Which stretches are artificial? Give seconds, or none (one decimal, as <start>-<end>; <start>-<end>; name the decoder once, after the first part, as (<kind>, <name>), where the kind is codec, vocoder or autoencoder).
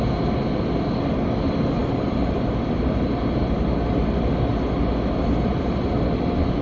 none